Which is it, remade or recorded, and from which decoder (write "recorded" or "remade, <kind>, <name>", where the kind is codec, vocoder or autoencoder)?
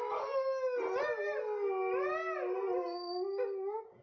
recorded